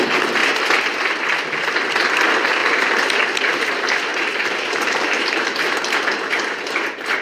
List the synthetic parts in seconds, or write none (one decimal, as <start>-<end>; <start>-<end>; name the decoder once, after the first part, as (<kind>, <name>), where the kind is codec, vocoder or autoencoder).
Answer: 4.1-5.9 (vocoder, BigVGAN v2)